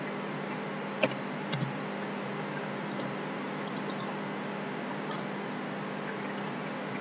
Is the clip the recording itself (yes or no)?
yes